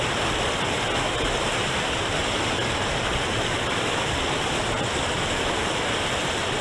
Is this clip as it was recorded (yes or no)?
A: yes